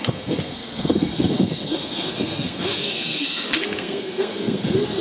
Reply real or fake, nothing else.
fake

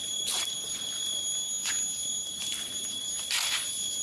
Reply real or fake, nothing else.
real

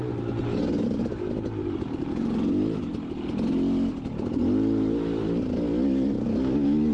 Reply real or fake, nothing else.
real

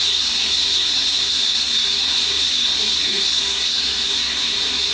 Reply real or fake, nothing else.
fake